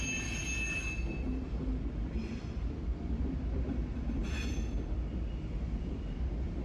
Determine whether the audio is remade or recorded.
recorded